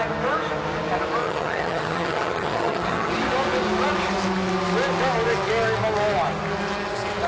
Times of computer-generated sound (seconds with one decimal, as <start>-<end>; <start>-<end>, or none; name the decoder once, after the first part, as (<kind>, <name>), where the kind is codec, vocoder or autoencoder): 1.2-3.1 (vocoder, HiFi-GAN)